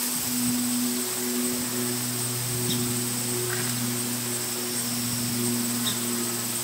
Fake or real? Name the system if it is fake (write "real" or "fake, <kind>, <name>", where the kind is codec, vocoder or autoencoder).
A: real